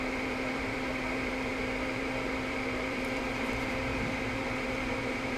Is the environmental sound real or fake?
fake